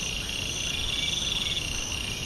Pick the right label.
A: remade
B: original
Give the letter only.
B